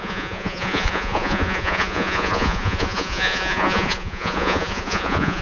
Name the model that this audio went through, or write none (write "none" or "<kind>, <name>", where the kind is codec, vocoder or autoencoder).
vocoder, Vocos